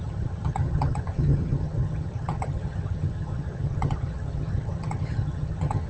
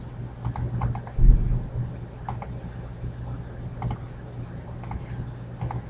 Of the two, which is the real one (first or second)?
second